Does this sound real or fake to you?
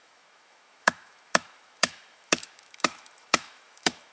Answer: fake